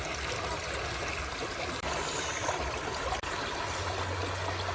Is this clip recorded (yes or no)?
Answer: yes